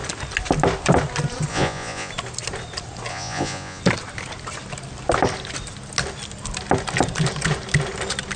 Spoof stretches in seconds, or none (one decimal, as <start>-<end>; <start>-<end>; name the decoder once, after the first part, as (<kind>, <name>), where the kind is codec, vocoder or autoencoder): 1.5-2.1 (vocoder, Vocos); 3.1-3.8